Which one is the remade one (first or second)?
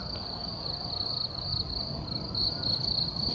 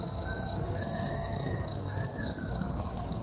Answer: second